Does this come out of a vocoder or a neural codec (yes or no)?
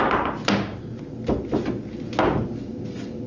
no